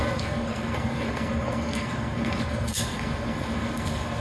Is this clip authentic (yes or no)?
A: no